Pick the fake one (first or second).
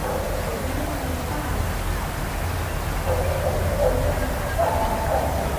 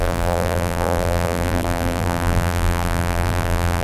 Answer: second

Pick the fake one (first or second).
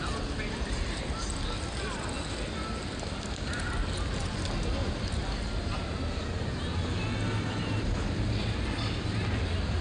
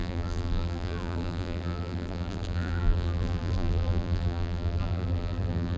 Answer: second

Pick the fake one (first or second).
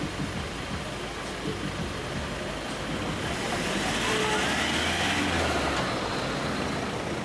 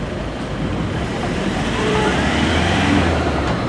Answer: second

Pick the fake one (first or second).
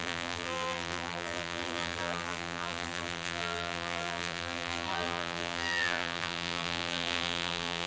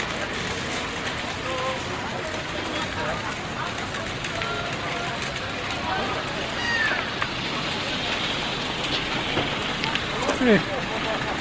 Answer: first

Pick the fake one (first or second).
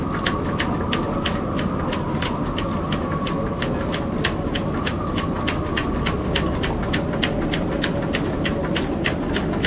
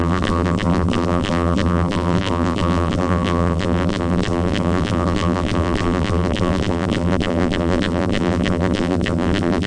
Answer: second